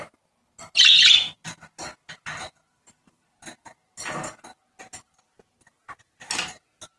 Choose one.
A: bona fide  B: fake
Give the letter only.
A